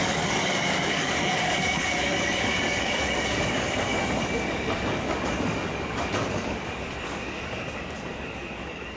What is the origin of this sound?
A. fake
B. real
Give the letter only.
A